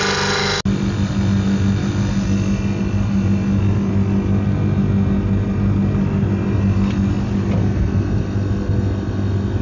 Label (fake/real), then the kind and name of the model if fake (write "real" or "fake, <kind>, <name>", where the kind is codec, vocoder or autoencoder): real